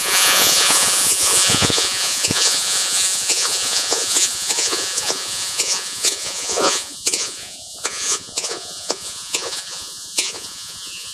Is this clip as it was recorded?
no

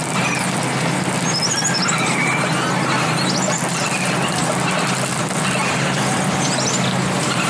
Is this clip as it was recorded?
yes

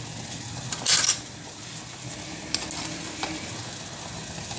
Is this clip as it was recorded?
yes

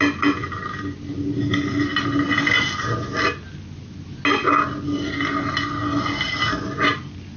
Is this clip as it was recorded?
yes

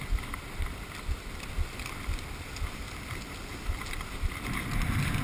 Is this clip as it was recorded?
yes